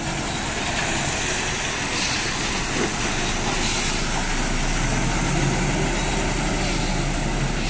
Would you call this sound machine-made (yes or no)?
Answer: no